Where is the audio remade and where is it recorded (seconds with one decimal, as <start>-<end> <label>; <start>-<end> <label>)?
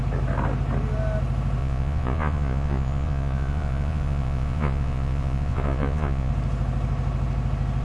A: 0.0-1.6 recorded; 1.6-6.3 remade; 6.3-7.8 recorded